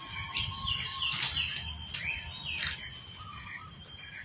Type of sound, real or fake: real